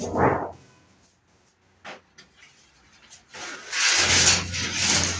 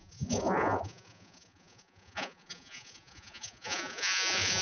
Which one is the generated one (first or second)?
second